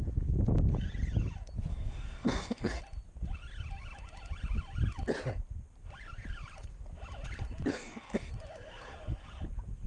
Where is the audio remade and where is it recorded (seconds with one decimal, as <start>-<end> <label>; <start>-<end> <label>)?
0.0-1.7 recorded; 1.7-2.8 remade; 2.8-7.7 recorded; 7.7-8.3 remade; 8.3-9.9 recorded